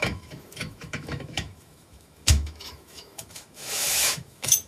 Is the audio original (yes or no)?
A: no